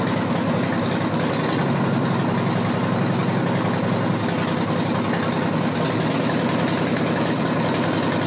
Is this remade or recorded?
recorded